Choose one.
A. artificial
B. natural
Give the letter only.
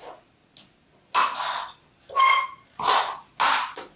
B